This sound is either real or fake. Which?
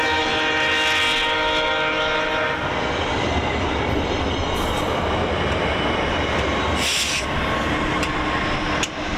real